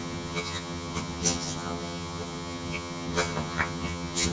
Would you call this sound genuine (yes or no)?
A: no